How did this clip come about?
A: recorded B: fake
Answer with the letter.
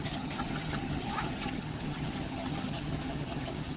B